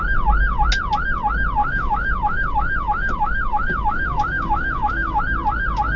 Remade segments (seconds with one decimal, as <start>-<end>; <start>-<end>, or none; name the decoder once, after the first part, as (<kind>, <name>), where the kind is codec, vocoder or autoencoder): 1.6-5.2 (autoencoder, DAC-VAE)